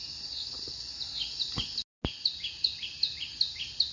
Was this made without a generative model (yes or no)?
yes